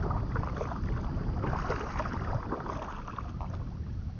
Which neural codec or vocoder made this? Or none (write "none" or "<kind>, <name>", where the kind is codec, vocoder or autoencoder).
none